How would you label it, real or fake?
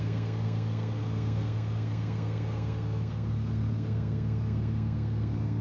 fake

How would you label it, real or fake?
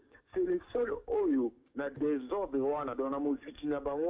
fake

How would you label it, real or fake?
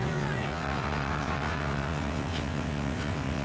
fake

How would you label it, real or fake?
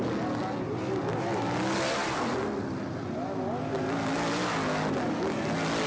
real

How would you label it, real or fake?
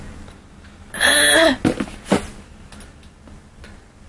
real